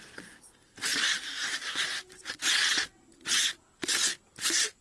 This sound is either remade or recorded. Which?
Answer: recorded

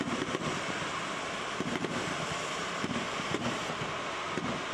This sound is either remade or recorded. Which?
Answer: recorded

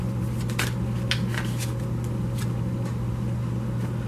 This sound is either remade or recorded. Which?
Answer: recorded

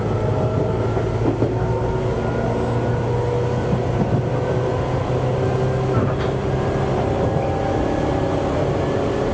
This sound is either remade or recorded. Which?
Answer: recorded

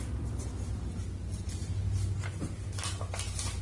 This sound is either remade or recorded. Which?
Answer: recorded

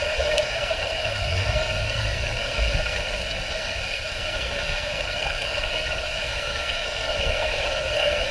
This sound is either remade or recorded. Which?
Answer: remade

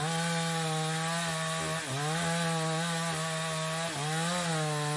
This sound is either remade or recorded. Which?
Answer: recorded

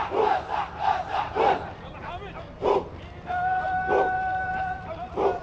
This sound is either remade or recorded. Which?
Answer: recorded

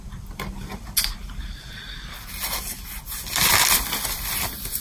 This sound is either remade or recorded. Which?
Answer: recorded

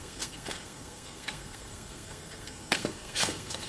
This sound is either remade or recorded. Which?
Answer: remade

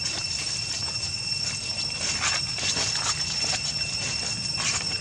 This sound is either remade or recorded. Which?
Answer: recorded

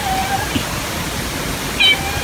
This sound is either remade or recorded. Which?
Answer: recorded